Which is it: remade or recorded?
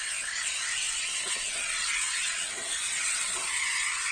remade